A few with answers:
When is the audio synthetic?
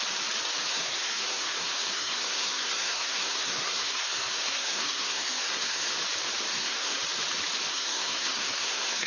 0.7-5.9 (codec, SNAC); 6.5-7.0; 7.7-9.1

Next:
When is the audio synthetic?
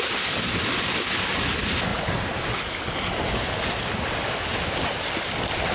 0.0-1.9 (vocoder, BigVGAN v2); 4.5-5.7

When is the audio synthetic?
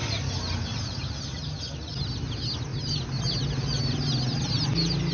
none